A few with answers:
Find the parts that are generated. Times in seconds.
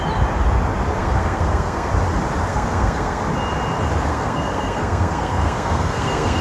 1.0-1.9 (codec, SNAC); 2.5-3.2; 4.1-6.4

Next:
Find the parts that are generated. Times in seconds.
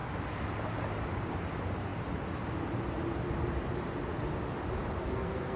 5.0-5.6 (codec, SNAC)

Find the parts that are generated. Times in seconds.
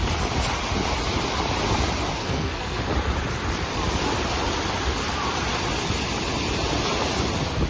2.2-2.8 (codec, SNAC)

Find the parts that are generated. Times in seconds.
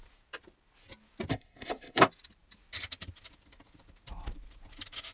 1.3-2.0 (codec, SNAC)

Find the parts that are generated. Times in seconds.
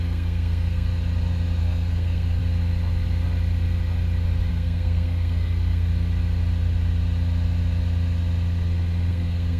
0.0-0.9 (codec, SNAC); 1.6-2.4; 4.5-5.9; 9.1-9.6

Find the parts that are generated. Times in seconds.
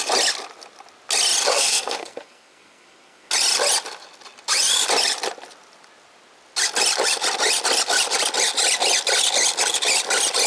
1.5-3.3 (codec, SNAC)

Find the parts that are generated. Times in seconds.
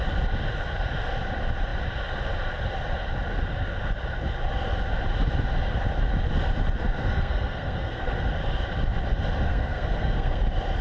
7.0-8.1 (codec, SNAC); 9.5-10.4